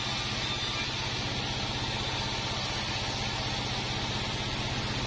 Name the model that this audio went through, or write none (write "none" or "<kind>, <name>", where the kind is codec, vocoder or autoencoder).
none